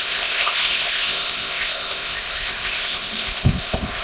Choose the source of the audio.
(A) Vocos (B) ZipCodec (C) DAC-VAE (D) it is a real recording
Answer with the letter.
B